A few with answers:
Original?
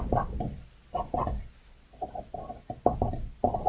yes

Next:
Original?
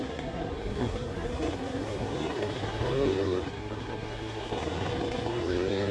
no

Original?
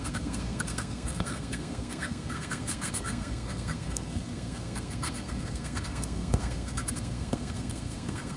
no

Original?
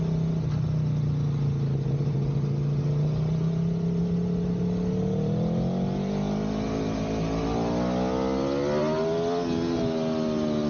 yes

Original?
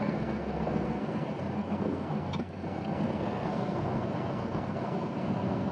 no